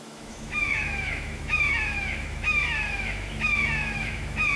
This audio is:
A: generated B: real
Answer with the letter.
A